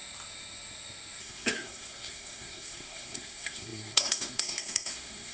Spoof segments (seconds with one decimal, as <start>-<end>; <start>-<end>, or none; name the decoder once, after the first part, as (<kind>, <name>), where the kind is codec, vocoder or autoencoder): 1.2-5.3 (codec, SNAC)